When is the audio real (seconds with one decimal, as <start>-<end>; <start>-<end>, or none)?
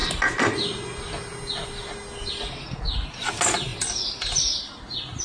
0.0-5.2